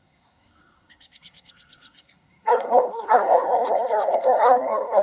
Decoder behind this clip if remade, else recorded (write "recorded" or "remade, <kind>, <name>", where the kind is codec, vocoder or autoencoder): remade, codec, SNAC